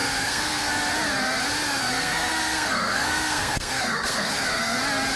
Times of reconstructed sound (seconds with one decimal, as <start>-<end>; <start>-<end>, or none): 0.0-0.7; 1.8-4.8